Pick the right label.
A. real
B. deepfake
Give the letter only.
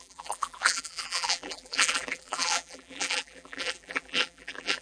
B